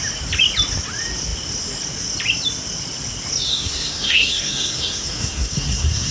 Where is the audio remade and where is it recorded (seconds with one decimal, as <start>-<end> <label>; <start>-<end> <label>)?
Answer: 0.0-3.5 recorded; 3.5-6.1 remade